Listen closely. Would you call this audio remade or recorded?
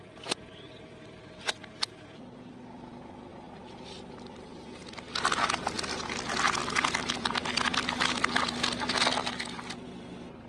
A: remade